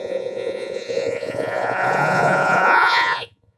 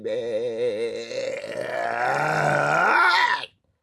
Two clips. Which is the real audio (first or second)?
second